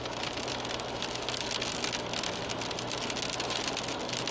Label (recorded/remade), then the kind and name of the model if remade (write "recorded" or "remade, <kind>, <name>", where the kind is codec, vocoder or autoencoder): recorded